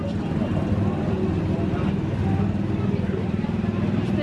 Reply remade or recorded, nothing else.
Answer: recorded